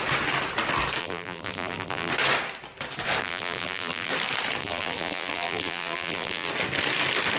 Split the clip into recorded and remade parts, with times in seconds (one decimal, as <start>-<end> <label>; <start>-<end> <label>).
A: 0.0-1.0 recorded; 1.0-2.1 remade; 2.1-3.2 recorded; 3.2-4.1 remade; 4.1-4.6 recorded; 4.6-6.5 remade; 6.5-7.4 recorded